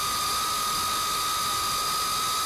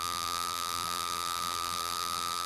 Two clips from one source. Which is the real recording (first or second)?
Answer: first